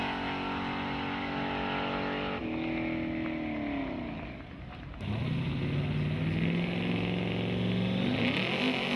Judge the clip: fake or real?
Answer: real